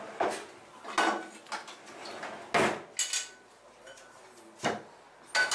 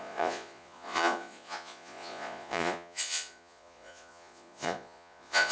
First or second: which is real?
first